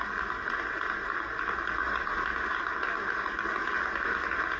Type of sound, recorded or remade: recorded